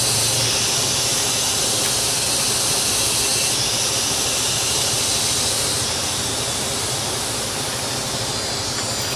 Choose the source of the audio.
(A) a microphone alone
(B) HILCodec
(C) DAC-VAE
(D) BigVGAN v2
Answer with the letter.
A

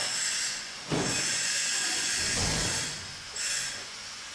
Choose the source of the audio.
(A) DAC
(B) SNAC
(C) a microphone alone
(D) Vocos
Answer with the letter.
D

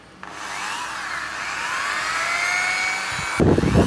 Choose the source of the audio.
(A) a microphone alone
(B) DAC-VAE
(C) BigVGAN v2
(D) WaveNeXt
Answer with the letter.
A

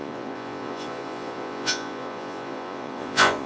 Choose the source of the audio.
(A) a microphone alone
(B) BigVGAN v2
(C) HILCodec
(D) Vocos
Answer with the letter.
D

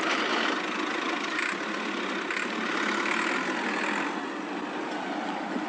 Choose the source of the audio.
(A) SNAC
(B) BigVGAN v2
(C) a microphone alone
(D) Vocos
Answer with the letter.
C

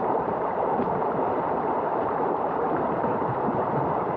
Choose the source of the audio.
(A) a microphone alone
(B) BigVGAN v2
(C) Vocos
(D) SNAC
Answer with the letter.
B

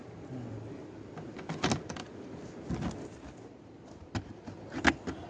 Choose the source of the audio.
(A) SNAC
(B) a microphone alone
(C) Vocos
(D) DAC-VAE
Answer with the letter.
B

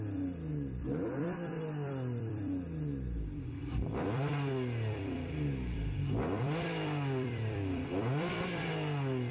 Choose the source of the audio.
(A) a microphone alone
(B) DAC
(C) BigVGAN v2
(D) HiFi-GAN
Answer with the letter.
C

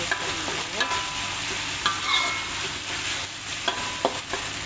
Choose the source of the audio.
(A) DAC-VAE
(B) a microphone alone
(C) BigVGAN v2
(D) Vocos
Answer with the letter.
B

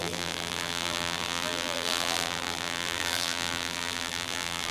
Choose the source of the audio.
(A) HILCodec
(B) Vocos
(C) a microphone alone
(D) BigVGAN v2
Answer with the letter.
D